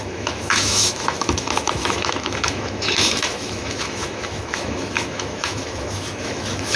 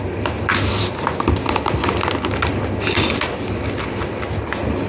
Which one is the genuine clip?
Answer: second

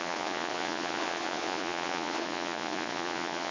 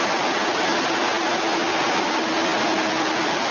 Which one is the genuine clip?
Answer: second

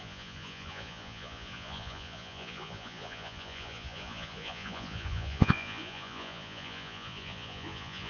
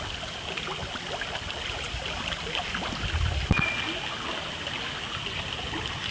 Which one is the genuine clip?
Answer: second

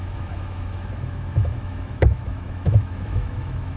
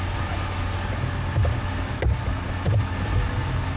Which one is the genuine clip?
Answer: second